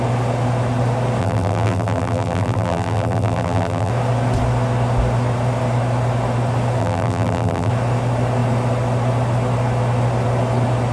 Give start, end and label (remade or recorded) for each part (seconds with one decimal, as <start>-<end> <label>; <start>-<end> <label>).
0.0-1.2 recorded; 1.2-3.9 remade; 3.9-6.8 recorded; 6.8-7.7 remade; 7.7-10.9 recorded